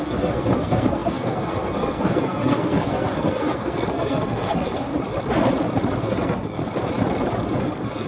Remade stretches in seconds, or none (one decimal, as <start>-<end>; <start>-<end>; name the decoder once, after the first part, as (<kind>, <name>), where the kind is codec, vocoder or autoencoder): 0.0-4.9 (codec, SNAC); 6.0-6.6; 7.6-8.1

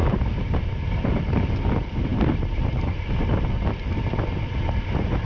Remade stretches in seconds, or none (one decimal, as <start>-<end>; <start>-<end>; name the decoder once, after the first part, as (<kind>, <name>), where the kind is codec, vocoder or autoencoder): none

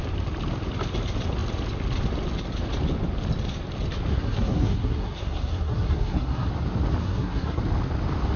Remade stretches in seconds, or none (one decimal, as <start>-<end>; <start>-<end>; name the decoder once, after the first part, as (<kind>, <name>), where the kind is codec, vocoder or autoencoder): 4.1-6.5 (codec, SNAC); 7.0-7.6

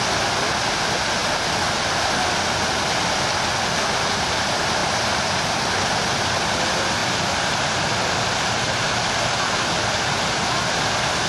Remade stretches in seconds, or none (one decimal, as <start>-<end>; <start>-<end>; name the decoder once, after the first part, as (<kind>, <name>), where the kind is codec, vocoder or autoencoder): 4.8-5.6 (vocoder, BigVGAN v2); 7.0-7.7

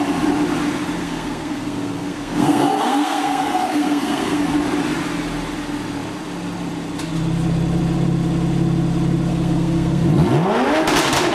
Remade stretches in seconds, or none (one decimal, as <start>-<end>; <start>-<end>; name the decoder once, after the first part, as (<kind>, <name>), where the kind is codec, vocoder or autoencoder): 1.0-4.4 (codec, SNAC); 9.3-10.0

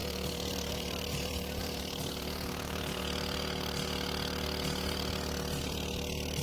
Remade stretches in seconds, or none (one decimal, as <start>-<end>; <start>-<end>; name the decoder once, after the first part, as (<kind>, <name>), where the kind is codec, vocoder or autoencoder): 0.0-3.0 (vocoder, BigVGAN v2); 5.6-6.4

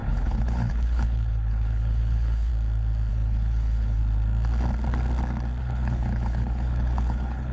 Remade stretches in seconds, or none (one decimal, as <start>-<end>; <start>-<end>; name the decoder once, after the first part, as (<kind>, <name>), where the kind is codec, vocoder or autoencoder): 0.0-2.5 (codec, HILCodec); 3.1-4.0; 5.6-7.5